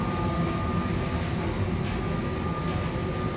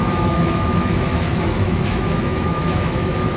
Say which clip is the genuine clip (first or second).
first